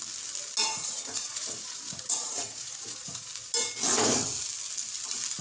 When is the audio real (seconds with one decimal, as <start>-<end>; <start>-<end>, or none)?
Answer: 0.0-0.6; 3.3-5.4